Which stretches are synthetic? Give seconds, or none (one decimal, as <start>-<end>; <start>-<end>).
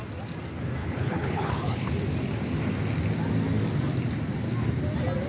0.8-1.9